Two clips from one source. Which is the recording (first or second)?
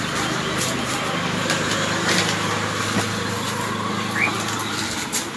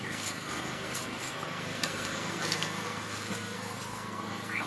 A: first